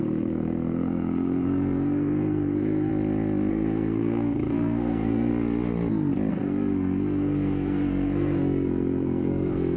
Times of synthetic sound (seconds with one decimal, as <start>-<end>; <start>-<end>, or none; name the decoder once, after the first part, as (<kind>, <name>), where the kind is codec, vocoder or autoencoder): 0.0-2.9 (codec, SNAC); 3.5-5.3; 6.3-9.8